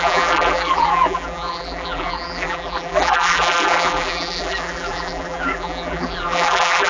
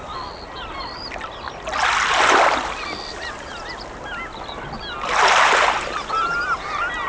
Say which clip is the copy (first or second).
first